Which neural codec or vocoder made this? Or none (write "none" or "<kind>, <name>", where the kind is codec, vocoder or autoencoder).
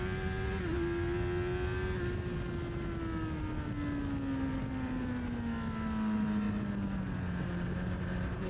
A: none